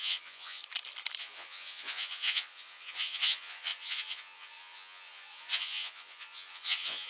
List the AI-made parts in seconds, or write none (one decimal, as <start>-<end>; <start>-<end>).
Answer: 0.0-0.6; 1.2-7.1